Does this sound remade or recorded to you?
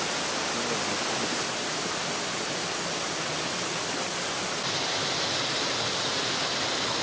recorded